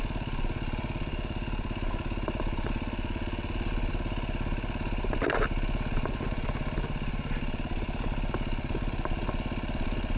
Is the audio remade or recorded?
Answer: recorded